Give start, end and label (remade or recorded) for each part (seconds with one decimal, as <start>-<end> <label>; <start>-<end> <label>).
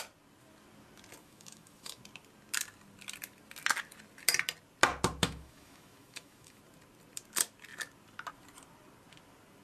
0.0-1.2 recorded; 1.2-2.0 remade; 2.0-5.2 recorded; 5.2-6.6 remade; 6.6-9.6 recorded